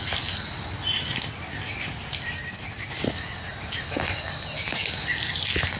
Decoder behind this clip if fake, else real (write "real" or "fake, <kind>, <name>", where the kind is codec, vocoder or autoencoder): real